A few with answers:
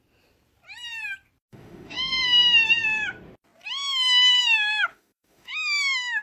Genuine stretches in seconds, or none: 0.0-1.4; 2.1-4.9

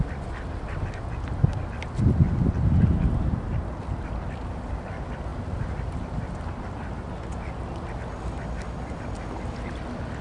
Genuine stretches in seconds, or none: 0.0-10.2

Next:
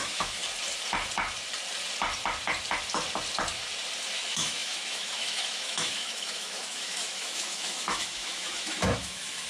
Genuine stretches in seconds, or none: 0.4-4.1

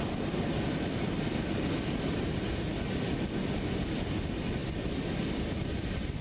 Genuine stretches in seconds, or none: 0.0-6.2